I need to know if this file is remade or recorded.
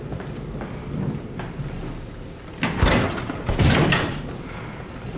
recorded